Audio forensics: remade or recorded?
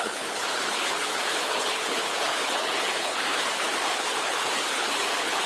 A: remade